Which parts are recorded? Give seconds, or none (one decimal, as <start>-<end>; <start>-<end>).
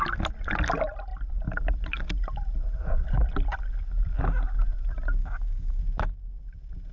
0.0-5.2; 5.8-6.9